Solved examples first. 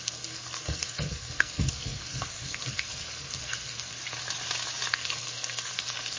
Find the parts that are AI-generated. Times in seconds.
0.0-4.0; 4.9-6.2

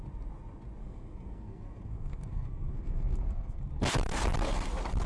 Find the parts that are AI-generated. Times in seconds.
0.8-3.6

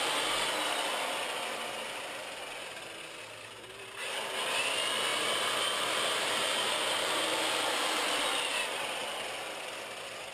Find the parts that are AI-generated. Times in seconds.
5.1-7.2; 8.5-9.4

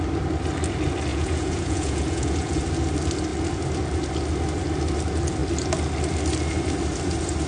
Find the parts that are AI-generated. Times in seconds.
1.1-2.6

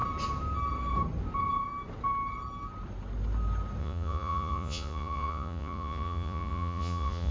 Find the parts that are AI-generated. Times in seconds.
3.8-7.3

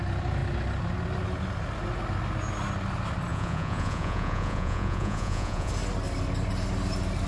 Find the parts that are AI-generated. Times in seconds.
3.3-5.7

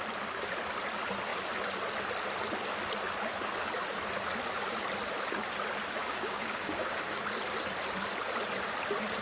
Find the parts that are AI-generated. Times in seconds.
6.0-7.2

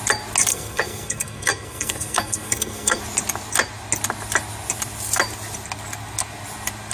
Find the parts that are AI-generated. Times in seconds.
0.5-3.0